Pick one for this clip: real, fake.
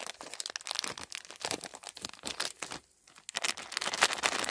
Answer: real